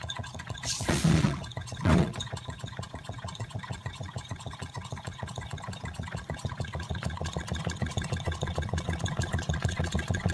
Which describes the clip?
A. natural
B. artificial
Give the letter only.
B